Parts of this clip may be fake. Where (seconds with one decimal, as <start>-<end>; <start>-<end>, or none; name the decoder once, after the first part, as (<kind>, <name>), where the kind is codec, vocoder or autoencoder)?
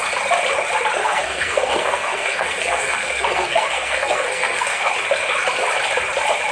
1.0-4.9 (codec, SNAC)